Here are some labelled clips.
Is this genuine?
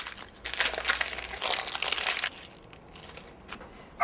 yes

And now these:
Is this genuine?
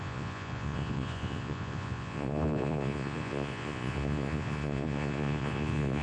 no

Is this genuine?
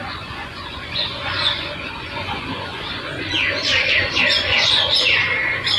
no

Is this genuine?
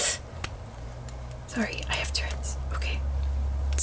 yes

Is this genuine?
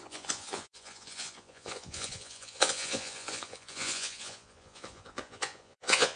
no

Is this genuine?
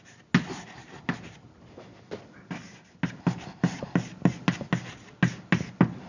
yes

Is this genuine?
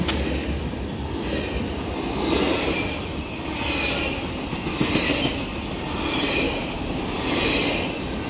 yes